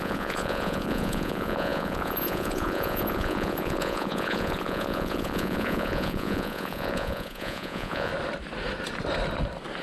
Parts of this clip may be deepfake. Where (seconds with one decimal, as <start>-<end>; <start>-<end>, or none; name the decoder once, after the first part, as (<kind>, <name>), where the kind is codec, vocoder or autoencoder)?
0.0-8.1 (vocoder, Vocos)